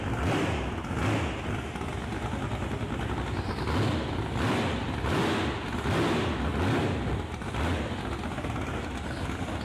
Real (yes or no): yes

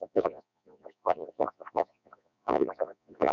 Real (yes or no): no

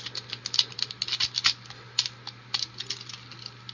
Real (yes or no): yes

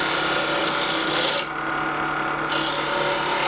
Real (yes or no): yes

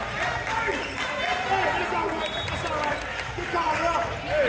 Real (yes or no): yes